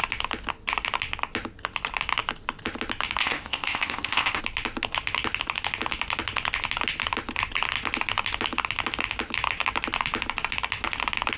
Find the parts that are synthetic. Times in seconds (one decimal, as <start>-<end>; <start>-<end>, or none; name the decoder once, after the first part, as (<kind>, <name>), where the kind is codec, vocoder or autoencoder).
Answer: 3.2-4.4 (codec, ZipCodec)